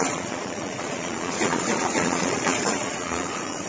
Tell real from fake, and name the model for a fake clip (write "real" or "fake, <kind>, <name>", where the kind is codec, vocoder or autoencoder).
fake, vocoder, Vocos